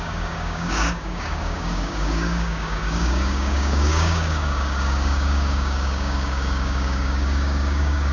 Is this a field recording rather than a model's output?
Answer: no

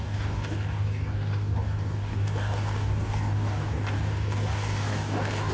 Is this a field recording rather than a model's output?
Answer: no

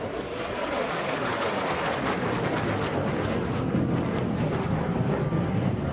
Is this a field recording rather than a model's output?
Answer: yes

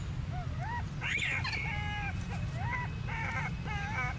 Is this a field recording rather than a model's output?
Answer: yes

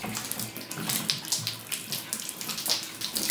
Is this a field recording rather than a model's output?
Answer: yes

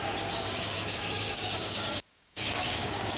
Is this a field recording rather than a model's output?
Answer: no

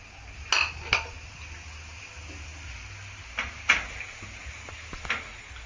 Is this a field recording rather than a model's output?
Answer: yes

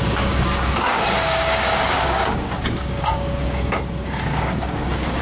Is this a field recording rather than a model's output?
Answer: no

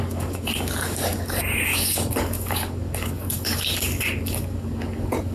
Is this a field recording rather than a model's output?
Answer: no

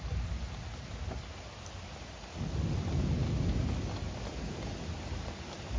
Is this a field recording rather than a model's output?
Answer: yes